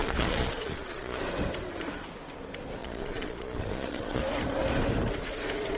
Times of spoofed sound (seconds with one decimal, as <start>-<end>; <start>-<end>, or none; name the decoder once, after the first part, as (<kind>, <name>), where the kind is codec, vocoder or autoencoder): 0.0-1.2 (vocoder, Vocos); 2.8-4.2